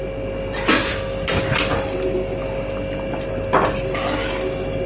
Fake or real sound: real